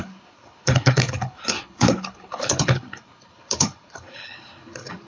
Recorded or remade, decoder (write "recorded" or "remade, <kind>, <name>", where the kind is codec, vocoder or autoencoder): remade, codec, HILCodec